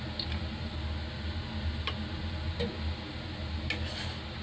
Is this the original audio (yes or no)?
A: yes